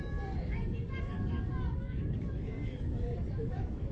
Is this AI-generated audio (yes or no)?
yes